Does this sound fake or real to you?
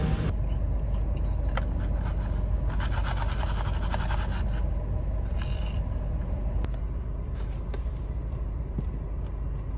real